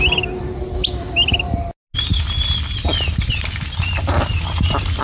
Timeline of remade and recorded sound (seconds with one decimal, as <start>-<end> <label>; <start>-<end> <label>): 0.0-5.0 recorded

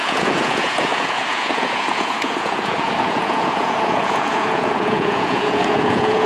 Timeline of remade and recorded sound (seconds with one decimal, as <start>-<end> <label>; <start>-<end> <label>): 0.0-6.3 remade

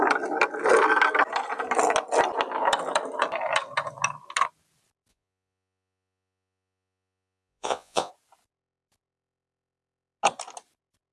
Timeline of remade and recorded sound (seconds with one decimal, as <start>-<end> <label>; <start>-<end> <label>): 0.0-5.1 recorded; 5.1-8.1 remade; 8.1-11.1 recorded

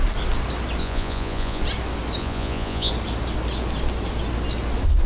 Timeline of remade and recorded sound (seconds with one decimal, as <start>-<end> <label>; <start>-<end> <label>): 0.0-0.8 recorded; 0.8-1.6 remade; 1.6-2.2 recorded; 2.2-2.9 remade; 2.9-5.1 recorded